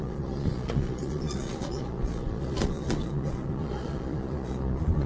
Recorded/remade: remade